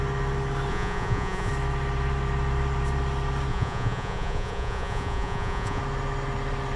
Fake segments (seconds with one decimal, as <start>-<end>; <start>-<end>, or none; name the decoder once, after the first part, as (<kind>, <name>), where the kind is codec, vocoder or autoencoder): 0.7-1.5 (vocoder, Vocos); 3.5-5.8